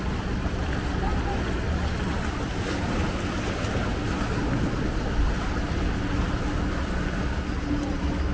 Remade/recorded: recorded